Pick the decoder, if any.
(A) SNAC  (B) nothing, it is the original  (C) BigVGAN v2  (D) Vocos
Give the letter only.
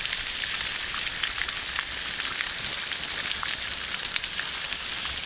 B